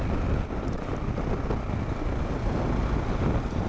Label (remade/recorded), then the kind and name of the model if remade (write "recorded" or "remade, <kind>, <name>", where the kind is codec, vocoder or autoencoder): recorded